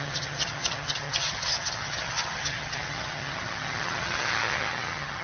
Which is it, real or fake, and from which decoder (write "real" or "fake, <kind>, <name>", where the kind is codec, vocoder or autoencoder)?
fake, vocoder, HiFi-GAN